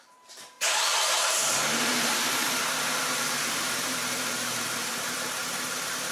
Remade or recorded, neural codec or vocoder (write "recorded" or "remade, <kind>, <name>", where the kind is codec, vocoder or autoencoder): remade, vocoder, BigVGAN v2